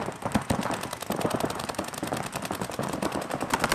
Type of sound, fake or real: real